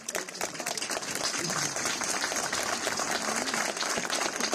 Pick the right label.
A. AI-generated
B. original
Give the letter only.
A